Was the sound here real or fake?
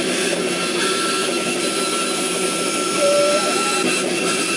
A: real